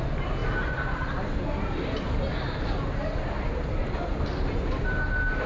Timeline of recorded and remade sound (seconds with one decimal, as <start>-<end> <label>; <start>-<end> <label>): 0.0-5.5 recorded